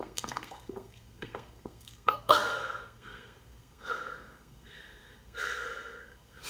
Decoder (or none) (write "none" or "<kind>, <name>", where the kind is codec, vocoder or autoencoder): codec, SNAC